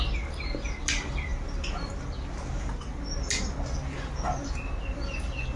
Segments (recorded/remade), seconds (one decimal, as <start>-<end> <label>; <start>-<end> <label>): 0.0-5.6 recorded